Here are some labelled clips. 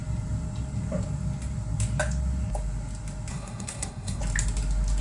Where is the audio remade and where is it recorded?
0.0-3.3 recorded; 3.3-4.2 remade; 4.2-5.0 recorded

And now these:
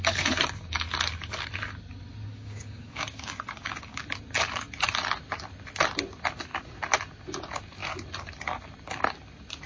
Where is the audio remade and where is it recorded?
0.0-2.3 recorded; 2.3-4.0 remade; 4.0-9.7 recorded